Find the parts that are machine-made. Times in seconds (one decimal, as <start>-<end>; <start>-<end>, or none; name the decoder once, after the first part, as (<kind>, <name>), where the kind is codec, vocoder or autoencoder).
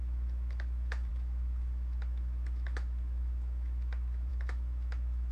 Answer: 0.0-5.3 (autoencoder, DAC-VAE)